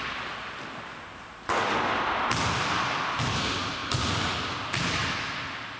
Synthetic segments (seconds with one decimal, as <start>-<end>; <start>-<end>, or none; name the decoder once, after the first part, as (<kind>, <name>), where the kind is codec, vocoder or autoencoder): none